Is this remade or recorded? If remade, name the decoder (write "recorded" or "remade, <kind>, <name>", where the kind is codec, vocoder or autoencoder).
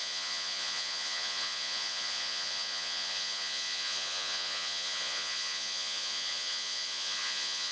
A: remade, vocoder, Vocos